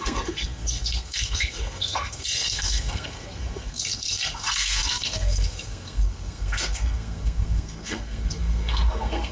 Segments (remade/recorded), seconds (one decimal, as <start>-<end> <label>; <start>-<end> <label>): 0.0-9.3 remade